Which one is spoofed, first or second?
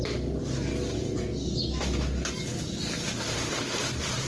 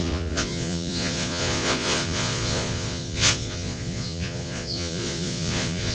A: second